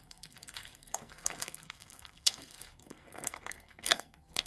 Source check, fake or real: fake